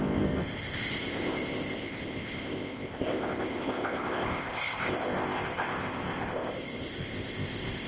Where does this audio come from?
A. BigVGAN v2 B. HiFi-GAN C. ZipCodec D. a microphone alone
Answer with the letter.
C